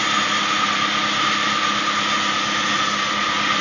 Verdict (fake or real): real